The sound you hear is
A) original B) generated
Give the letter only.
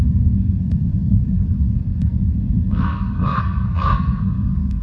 B